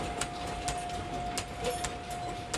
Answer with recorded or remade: recorded